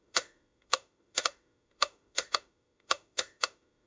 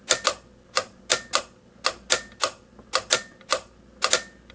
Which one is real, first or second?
second